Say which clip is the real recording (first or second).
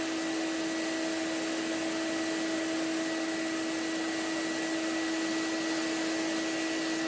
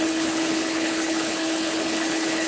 first